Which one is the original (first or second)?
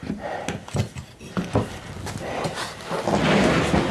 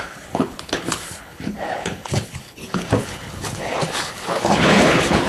first